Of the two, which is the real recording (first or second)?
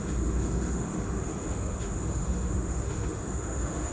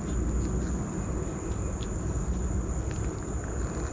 second